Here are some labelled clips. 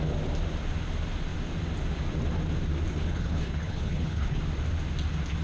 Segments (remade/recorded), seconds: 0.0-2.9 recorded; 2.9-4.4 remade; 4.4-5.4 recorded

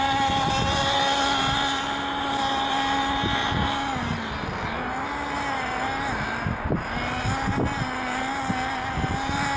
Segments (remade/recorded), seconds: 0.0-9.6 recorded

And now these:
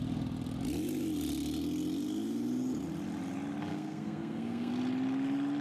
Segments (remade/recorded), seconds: 0.0-3.7 recorded; 3.7-4.7 remade; 4.7-5.6 recorded

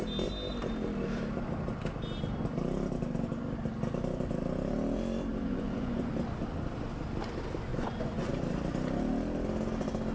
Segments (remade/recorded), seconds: 0.0-5.3 recorded; 5.3-6.1 remade; 6.1-7.7 recorded; 7.7-8.3 remade; 8.3-10.1 recorded

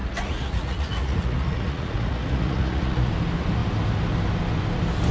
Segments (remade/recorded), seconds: 0.0-3.1 remade; 3.1-5.1 recorded

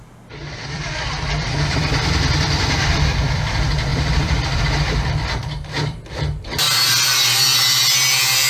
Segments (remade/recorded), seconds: 0.0-0.4 recorded; 0.4-3.5 remade; 3.5-3.9 recorded; 3.9-4.6 remade; 4.6-8.5 recorded